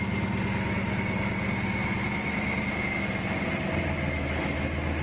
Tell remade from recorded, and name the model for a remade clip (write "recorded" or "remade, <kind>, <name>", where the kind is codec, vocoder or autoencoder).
recorded